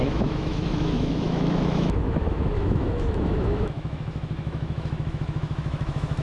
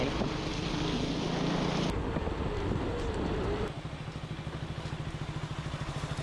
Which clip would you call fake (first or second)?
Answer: first